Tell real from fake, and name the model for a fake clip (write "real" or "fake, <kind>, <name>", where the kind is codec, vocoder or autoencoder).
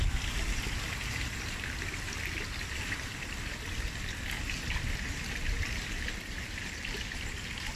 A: real